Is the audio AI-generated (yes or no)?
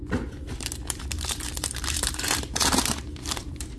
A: yes